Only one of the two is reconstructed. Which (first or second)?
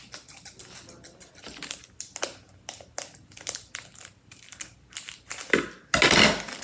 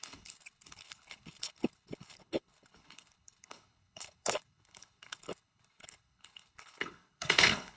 second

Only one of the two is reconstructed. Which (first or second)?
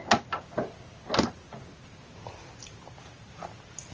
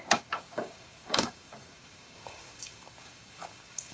second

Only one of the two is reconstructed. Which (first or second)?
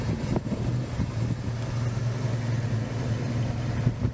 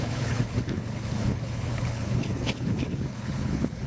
second